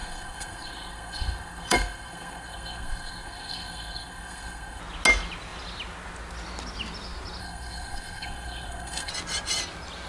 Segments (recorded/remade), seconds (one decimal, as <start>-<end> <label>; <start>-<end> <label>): 0.0-4.8 remade; 4.8-7.4 recorded; 7.4-9.1 remade; 9.1-10.1 recorded